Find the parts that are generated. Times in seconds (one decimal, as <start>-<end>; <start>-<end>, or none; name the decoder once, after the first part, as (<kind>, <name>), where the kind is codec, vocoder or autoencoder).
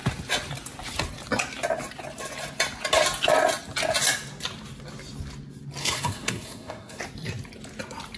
5.8-7.0 (codec, SNAC)